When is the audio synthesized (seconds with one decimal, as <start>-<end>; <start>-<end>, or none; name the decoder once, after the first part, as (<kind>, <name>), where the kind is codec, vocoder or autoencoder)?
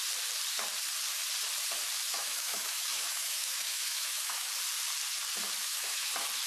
2.1-4.5 (autoencoder, DAC-VAE); 5.6-6.1